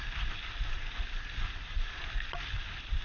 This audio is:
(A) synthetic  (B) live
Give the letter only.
B